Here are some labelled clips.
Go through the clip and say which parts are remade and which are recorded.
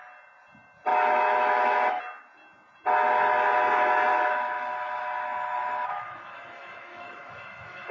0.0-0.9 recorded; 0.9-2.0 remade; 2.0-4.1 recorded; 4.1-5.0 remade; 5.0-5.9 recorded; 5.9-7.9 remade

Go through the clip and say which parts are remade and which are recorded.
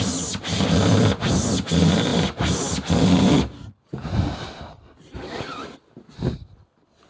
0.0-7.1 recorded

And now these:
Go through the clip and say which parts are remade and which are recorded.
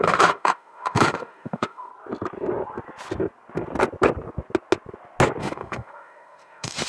0.0-1.9 remade; 1.9-5.4 recorded; 5.4-6.9 remade